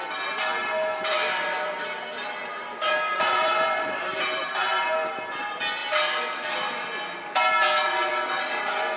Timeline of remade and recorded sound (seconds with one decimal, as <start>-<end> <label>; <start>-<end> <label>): 0.0-1.4 recorded; 1.4-2.0 remade; 2.0-2.4 recorded; 2.4-5.2 remade; 5.2-9.0 recorded